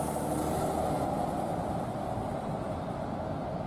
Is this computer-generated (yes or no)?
no